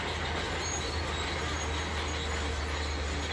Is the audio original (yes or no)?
yes